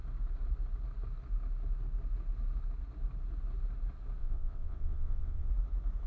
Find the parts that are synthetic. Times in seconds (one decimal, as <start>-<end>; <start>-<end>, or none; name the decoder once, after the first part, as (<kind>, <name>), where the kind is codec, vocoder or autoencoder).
4.2-5.5 (vocoder, WaveNeXt)